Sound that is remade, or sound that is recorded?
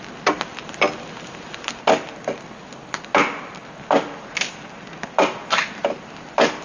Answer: recorded